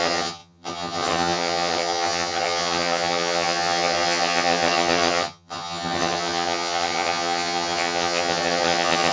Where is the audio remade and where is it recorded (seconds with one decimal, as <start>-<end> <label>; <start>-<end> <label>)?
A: 0.0-9.1 remade